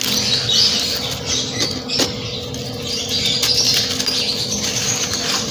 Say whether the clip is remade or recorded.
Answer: recorded